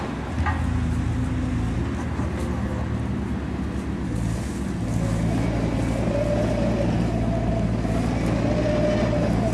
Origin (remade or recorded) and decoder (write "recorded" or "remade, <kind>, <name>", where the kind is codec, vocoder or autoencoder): recorded